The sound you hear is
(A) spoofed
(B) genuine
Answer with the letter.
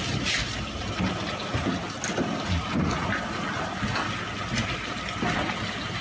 B